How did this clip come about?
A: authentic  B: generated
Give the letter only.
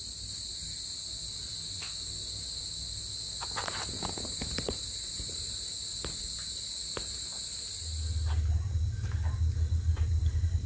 A